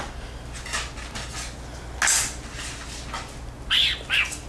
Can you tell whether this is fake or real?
real